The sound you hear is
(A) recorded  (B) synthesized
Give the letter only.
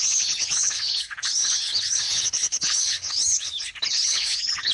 B